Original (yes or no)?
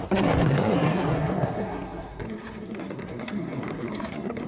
no